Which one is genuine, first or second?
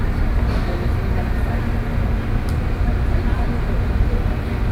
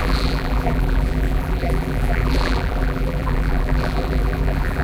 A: first